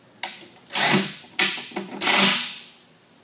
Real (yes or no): yes